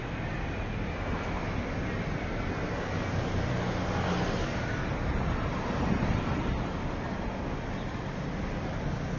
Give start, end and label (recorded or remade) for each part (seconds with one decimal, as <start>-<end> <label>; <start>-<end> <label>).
0.0-9.2 recorded